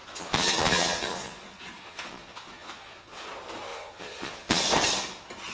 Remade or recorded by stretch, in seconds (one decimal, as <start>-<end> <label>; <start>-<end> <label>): 0.0-3.3 remade; 3.3-3.7 recorded; 3.7-4.6 remade; 4.6-5.5 recorded